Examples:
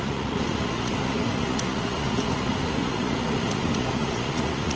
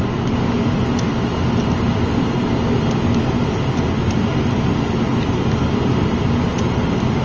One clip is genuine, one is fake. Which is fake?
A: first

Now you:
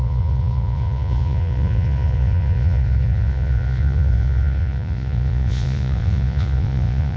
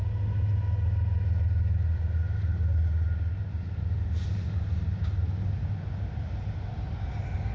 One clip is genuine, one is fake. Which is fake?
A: first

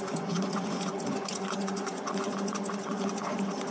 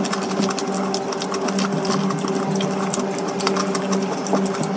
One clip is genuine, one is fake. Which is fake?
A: first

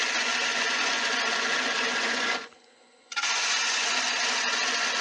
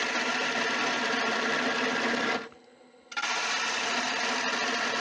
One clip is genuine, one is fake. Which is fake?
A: first